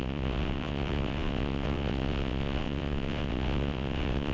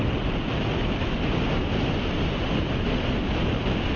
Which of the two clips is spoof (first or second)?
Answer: first